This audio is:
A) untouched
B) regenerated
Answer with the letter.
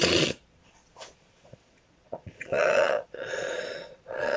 B